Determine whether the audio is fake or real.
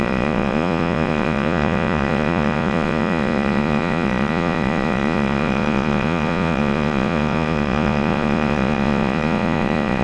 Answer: fake